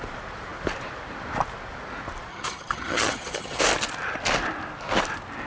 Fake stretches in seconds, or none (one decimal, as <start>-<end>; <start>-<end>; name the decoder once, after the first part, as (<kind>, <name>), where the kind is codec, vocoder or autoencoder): 2.3-3.6 (vocoder, HiFi-GAN)